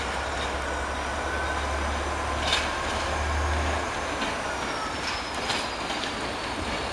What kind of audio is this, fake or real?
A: real